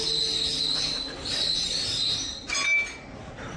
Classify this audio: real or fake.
real